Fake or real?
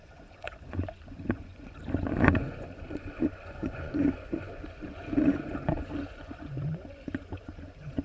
fake